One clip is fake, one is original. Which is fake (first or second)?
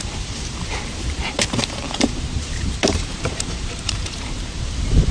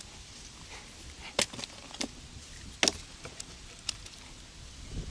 first